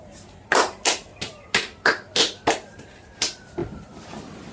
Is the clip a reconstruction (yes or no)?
no